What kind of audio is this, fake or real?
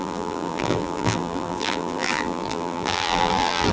fake